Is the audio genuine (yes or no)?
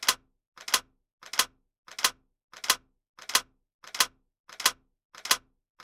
yes